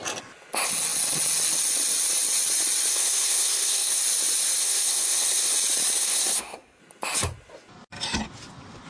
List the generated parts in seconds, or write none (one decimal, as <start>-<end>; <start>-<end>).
2.9-4.0; 4.6-5.5; 6.0-6.8